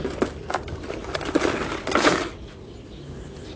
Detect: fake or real real